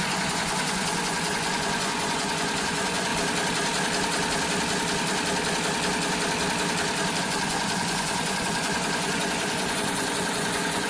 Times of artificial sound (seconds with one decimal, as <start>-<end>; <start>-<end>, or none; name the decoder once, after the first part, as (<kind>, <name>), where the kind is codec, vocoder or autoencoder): 0.0-3.1 (vocoder, Vocos); 7.2-10.9